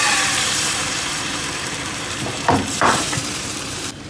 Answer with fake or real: fake